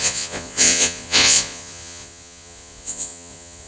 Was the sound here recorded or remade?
remade